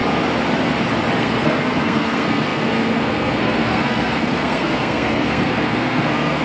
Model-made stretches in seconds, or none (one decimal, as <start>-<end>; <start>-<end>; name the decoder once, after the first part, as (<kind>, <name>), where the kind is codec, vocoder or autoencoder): 1.2-6.4 (codec, SNAC)